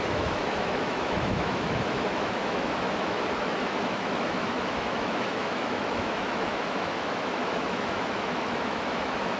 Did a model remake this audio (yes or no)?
yes